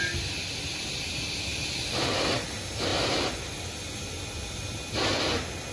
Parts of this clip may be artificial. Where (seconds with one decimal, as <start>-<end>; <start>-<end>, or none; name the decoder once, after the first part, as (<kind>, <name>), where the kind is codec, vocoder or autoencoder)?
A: none